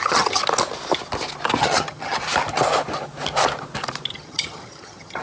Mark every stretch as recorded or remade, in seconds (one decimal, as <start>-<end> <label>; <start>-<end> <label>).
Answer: 0.0-0.4 remade; 0.4-1.6 recorded; 1.6-2.2 remade; 2.2-4.1 recorded; 4.1-5.2 remade